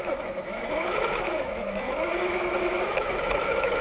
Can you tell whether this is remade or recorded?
remade